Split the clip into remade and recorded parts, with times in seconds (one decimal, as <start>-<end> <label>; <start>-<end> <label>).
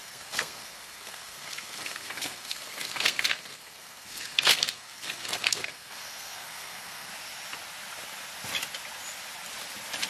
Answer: 0.0-7.1 remade; 7.1-10.1 recorded